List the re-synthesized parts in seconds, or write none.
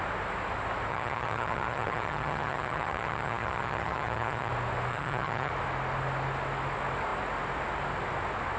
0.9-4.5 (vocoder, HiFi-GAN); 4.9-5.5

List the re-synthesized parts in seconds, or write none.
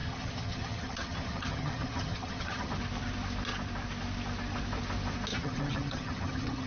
0.0-2.7 (vocoder, HiFi-GAN); 5.3-6.7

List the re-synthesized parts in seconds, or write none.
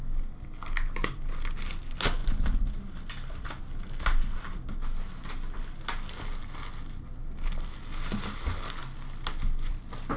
none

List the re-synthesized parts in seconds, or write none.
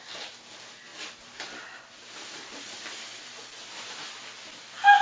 none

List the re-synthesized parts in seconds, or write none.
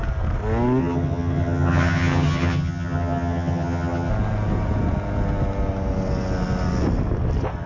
0.8-4.1 (vocoder, HiFi-GAN)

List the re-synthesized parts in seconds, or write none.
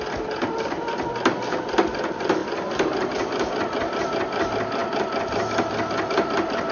none